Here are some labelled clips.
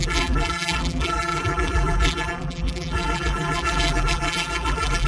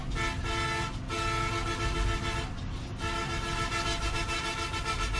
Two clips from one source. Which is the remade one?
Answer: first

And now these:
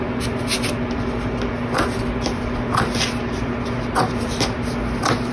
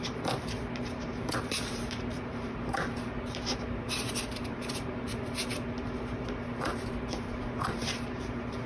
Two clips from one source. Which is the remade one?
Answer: second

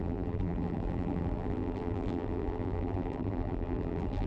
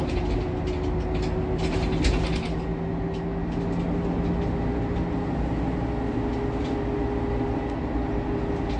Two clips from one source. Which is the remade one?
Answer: first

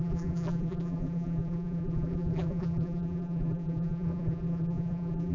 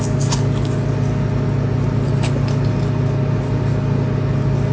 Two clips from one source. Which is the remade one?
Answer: first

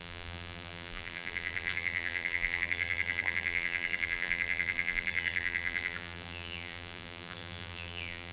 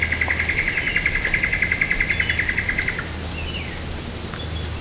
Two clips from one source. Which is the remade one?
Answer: first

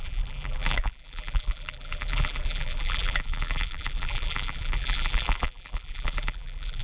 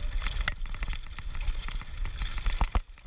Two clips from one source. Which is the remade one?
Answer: first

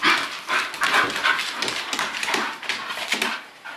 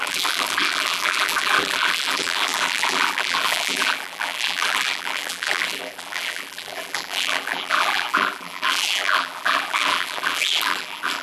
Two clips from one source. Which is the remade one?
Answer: second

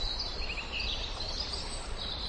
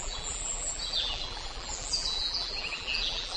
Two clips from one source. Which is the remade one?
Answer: second